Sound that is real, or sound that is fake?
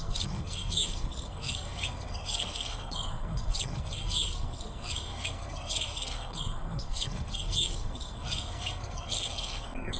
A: fake